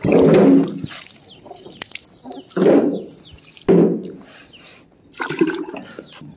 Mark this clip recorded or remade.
recorded